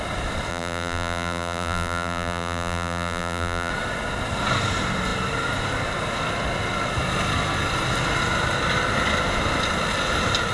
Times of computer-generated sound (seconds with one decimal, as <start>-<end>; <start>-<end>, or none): 0.5-3.7